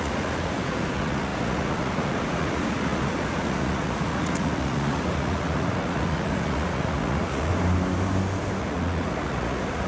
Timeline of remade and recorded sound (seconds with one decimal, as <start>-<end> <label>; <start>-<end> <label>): 0.0-7.5 remade; 7.5-8.6 recorded; 8.6-9.9 remade